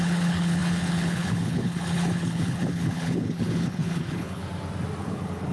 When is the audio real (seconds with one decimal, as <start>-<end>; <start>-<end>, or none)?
4.4-5.0